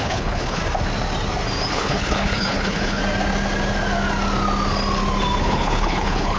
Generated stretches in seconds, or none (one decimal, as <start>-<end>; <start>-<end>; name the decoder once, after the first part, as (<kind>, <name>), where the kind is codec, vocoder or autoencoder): 0.0-0.6 (codec, HILCodec); 1.7-3.0; 5.4-6.4